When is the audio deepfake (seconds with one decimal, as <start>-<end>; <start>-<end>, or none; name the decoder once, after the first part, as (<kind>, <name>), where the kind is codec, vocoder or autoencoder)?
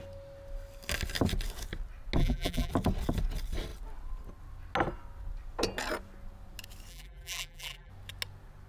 2.2-2.7 (vocoder, BigVGAN v2); 6.9-7.9